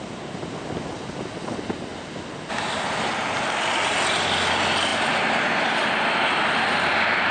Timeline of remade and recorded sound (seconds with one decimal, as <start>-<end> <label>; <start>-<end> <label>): 0.0-7.3 recorded